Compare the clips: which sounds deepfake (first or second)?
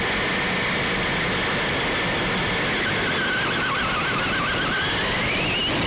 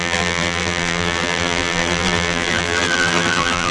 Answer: second